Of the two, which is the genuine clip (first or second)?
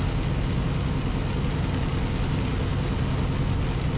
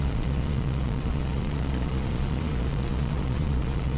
first